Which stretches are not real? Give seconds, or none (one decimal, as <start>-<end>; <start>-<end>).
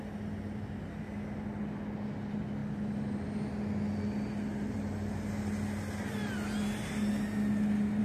2.6-5.2